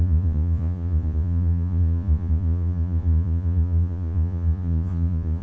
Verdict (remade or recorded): remade